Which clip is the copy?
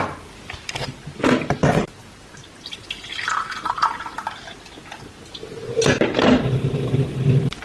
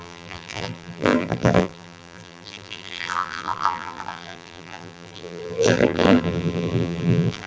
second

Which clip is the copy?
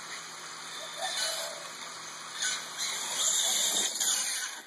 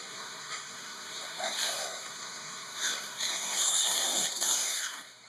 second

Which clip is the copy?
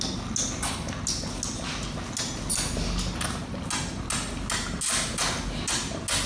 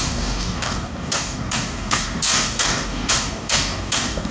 second